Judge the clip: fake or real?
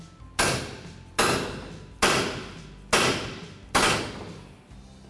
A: real